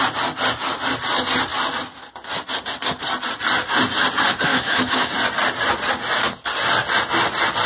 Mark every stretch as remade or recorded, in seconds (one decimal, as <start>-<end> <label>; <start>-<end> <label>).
0.0-4.5 recorded; 4.5-5.1 remade; 5.1-7.7 recorded